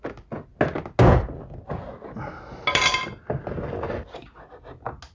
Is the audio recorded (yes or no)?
yes